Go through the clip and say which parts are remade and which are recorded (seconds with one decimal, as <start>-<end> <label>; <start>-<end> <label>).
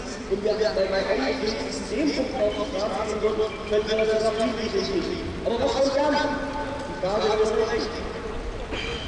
0.0-1.0 recorded; 1.0-1.6 remade; 1.6-9.1 recorded